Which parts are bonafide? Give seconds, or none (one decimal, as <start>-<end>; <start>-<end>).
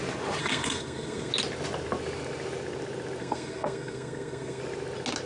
0.0-0.4; 1.3-3.2; 4.6-5.3